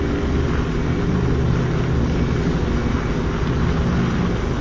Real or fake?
real